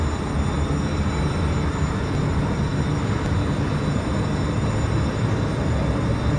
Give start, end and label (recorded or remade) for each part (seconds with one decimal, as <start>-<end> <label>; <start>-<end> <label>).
0.0-6.4 recorded